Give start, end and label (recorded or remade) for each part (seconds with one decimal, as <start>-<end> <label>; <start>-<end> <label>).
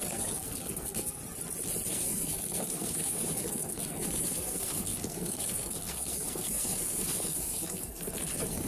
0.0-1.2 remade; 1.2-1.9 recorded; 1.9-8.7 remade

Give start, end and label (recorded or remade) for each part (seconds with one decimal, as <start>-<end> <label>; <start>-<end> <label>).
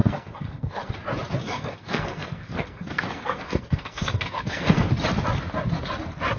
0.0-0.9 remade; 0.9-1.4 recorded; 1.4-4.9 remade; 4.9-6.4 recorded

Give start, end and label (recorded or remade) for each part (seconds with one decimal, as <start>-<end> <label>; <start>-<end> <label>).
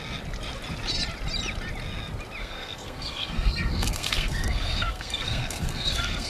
0.0-2.4 recorded; 2.4-6.3 remade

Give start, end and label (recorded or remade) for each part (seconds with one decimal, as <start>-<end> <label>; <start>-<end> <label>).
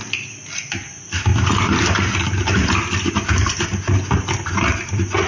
0.0-5.3 recorded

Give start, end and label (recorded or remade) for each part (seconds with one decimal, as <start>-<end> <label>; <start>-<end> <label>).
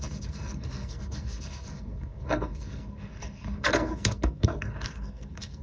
0.0-5.6 remade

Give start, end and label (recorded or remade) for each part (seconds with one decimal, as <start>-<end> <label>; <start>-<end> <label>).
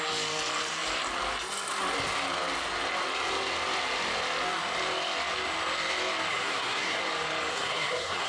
0.0-6.3 recorded; 6.3-7.0 remade; 7.0-7.5 recorded; 7.5-8.3 remade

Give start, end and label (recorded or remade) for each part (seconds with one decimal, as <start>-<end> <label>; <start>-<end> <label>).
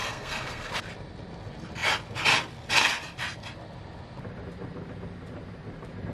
0.0-0.7 remade; 0.7-6.1 recorded